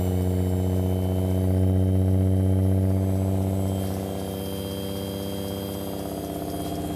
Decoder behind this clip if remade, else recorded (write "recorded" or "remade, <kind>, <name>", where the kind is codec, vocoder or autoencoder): recorded